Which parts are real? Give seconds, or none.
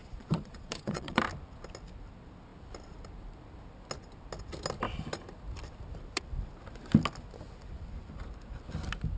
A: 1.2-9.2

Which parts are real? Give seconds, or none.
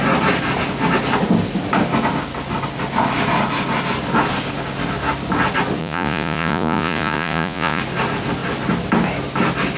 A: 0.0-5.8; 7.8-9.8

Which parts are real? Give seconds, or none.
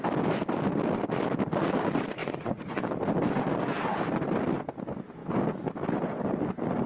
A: 0.0-2.2; 2.9-6.9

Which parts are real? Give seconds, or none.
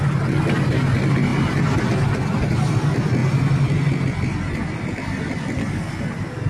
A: 0.0-6.5